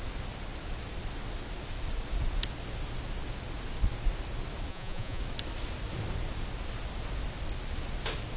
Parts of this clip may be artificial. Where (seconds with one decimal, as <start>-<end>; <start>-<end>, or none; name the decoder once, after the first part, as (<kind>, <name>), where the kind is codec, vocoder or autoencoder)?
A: 4.7-5.2 (vocoder, Vocos)